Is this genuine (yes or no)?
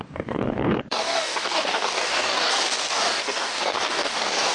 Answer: no